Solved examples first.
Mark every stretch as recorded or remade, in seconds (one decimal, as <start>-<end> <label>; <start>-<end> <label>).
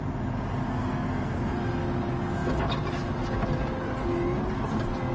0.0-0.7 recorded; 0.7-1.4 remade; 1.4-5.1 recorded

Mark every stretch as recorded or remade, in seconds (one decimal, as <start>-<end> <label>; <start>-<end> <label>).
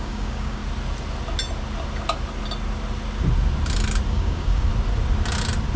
0.0-0.6 remade; 0.6-4.1 recorded; 4.1-4.7 remade; 4.7-5.8 recorded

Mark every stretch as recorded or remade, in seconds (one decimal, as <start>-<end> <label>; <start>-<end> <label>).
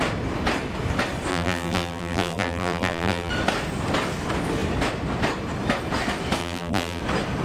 0.0-1.3 recorded; 1.3-3.3 remade; 3.3-6.4 recorded; 6.4-7.0 remade; 7.0-7.4 recorded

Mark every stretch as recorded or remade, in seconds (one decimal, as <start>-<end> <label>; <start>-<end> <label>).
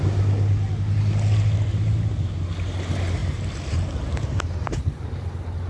0.0-3.2 recorded; 3.2-4.8 remade; 4.8-5.7 recorded